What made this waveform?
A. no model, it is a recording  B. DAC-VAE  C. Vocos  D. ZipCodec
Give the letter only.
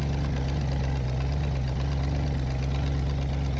A